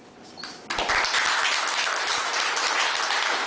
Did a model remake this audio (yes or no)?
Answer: no